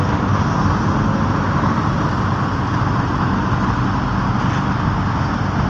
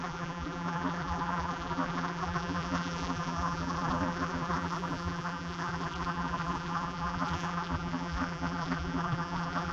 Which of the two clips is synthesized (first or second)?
second